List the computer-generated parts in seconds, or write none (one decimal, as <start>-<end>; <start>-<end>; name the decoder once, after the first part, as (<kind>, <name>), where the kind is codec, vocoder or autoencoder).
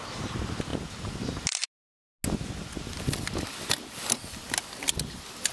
none